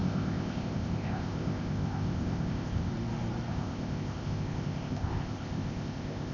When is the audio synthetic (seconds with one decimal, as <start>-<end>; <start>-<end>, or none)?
0.0-2.9; 3.5-6.3